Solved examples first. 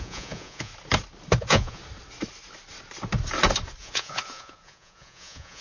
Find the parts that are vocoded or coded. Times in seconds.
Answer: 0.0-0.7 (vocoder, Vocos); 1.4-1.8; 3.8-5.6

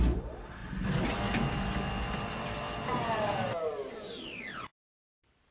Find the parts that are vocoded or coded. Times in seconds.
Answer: 0.0-0.6 (vocoder, BigVGAN v2); 3.9-5.5

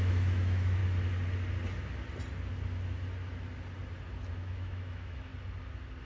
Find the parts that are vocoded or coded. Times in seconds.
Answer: 0.0-0.8 (autoencoder, DAC-VAE); 4.3-5.3